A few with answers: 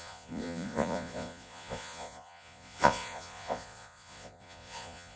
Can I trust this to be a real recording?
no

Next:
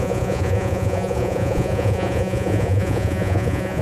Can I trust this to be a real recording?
no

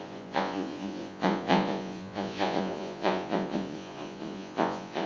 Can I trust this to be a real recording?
no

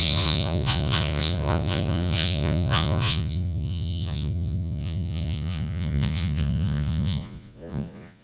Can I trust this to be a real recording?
no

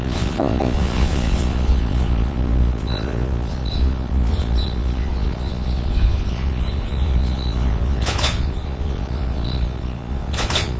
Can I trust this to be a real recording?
no